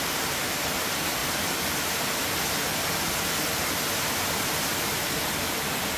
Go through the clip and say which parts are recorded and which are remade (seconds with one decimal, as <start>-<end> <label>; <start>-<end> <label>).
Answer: 0.0-6.0 recorded